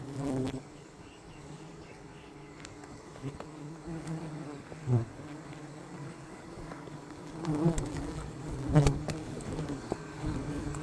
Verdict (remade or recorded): remade